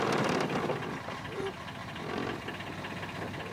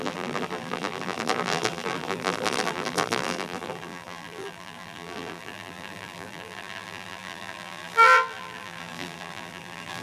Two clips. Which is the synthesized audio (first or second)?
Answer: second